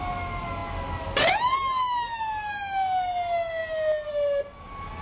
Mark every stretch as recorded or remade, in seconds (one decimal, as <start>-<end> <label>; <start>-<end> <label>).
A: 0.0-5.0 recorded